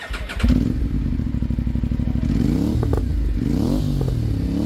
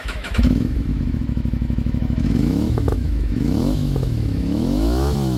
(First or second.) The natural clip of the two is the first